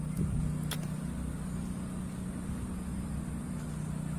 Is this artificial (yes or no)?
no